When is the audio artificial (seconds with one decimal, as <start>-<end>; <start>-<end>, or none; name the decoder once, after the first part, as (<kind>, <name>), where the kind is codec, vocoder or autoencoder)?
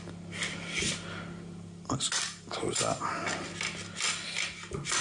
none